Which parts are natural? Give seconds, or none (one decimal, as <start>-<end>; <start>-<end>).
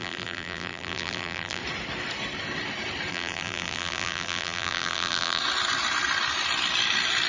1.6-3.1; 5.4-7.3